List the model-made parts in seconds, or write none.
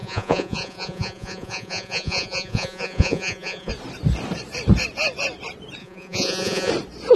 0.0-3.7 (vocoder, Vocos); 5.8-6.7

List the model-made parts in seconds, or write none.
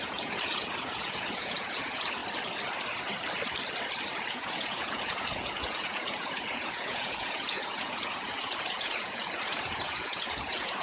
0.0-2.2 (vocoder, Vocos); 4.3-10.8